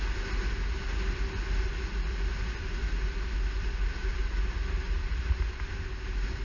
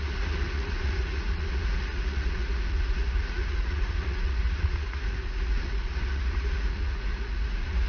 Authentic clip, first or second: first